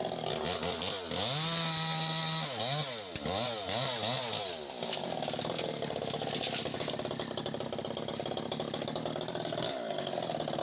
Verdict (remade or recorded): recorded